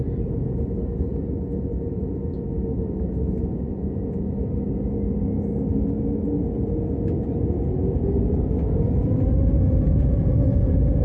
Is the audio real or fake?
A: real